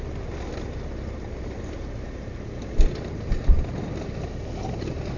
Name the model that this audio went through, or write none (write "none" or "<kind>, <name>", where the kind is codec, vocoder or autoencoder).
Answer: none